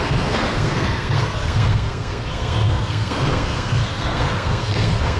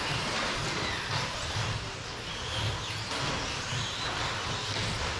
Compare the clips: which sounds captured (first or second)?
second